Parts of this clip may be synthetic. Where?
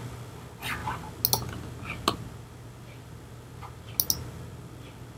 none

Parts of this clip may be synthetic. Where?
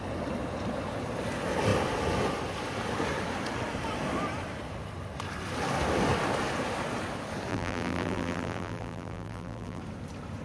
7.5-9.8 (vocoder, BigVGAN v2)